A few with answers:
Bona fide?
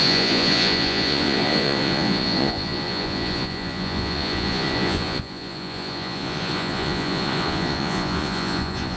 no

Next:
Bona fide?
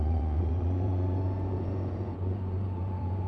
no